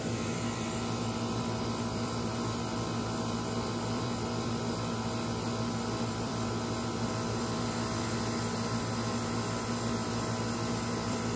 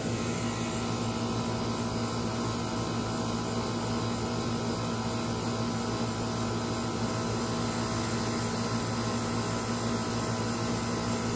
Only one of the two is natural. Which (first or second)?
second